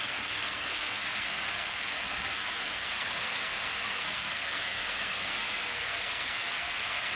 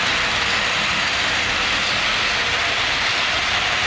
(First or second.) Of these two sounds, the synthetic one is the first